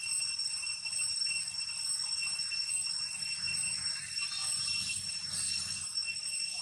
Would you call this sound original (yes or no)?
yes